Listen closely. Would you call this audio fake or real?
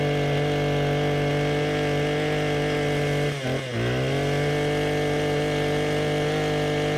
real